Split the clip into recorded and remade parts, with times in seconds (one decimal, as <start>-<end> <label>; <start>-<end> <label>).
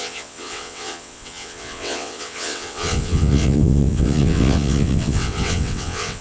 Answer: 0.0-6.2 remade